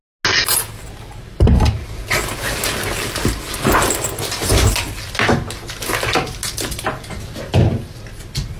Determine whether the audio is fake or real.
real